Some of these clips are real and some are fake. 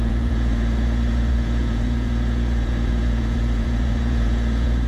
fake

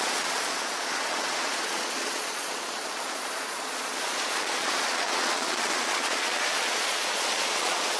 fake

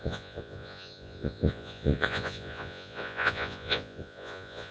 fake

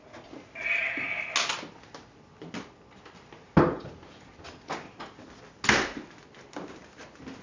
real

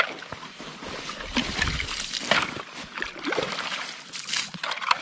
real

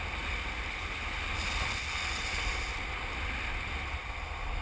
real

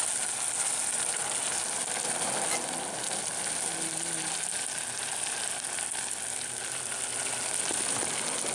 real